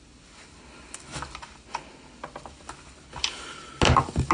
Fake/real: real